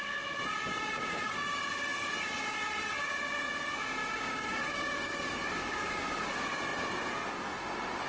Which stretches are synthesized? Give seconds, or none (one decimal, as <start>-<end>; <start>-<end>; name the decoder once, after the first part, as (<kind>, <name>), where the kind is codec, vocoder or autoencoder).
0.7-1.6 (codec, DAC); 4.0-6.0